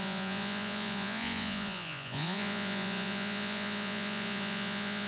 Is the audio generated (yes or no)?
yes